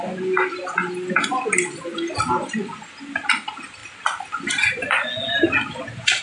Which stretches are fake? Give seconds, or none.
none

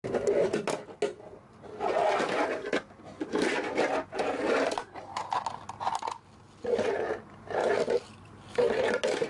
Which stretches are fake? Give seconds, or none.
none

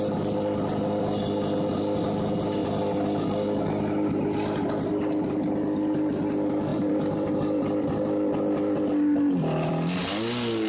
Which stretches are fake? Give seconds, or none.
6.7-10.0 (vocoder, BigVGAN v2)

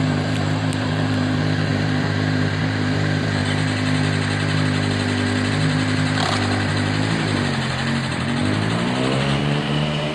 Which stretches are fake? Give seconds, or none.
0.0-3.4 (vocoder, BigVGAN v2); 5.5-8.4; 9.4-10.1

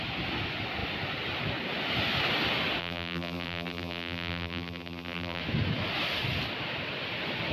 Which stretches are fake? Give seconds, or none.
2.8-5.4 (vocoder, BigVGAN v2)

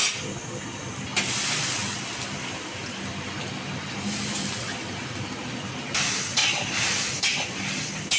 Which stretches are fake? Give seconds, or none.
6.4-7.7 (vocoder, BigVGAN v2)